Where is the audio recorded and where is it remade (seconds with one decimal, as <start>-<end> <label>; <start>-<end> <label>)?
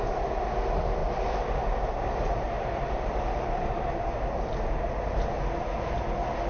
0.0-1.0 recorded; 1.0-4.9 remade; 4.9-6.5 recorded